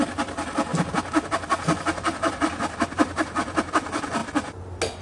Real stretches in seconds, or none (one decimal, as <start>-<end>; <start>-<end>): 0.0-5.0

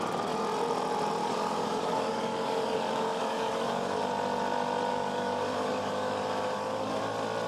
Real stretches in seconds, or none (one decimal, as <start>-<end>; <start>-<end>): 0.0-1.2; 4.0-4.9; 7.0-7.5